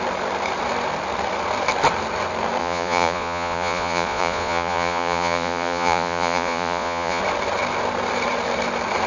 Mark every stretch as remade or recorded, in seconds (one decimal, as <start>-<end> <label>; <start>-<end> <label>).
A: 0.0-2.6 recorded; 2.6-7.2 remade; 7.2-9.1 recorded